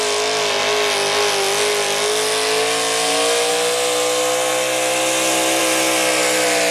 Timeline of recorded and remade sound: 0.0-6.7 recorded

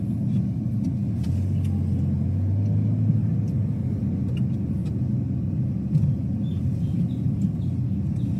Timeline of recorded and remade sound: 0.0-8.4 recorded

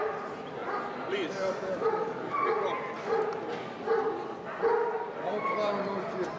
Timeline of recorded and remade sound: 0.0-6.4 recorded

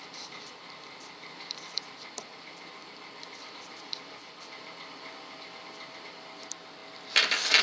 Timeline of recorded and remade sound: 0.0-6.8 remade; 6.8-7.6 recorded

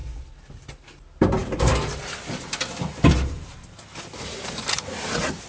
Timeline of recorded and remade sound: 0.0-5.5 recorded